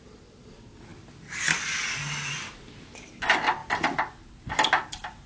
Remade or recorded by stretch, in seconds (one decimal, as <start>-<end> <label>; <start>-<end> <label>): 0.0-5.3 recorded